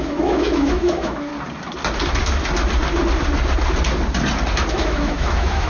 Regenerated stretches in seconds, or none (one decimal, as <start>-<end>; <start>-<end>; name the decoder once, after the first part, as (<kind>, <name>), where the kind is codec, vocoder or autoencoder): 0.0-1.3 (autoencoder, DAC-VAE); 4.7-5.7